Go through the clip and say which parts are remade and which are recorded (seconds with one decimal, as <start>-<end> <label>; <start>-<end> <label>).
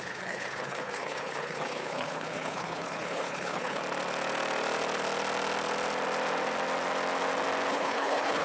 0.0-3.8 remade; 3.8-7.7 recorded; 7.7-8.4 remade